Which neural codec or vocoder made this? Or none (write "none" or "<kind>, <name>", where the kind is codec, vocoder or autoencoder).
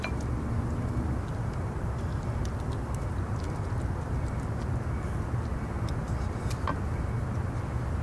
none